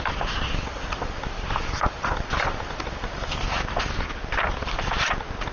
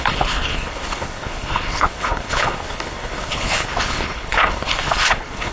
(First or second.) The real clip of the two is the first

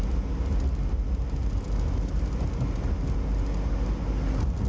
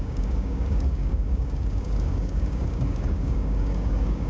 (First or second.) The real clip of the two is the first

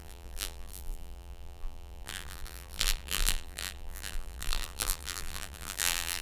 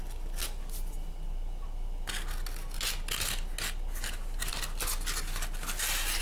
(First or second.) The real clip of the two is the second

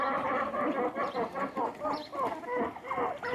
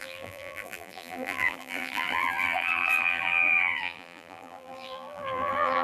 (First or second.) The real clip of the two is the first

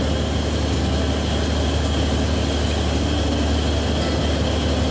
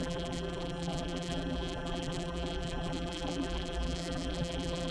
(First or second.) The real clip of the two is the first